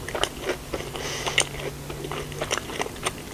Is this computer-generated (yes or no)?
no